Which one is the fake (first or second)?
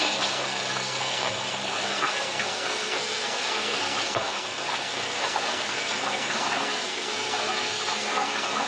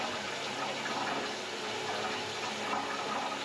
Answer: first